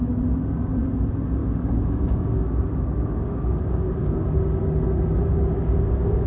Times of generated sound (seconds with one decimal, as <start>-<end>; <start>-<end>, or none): 1.4-4.2; 5.3-6.3